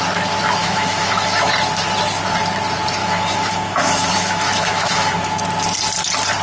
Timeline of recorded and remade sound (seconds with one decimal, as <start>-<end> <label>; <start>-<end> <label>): 0.0-0.6 recorded; 0.6-1.5 remade; 1.5-3.0 recorded; 3.0-5.4 remade; 5.4-6.4 recorded